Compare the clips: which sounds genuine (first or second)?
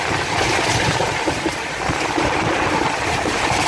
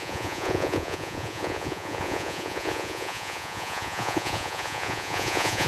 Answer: first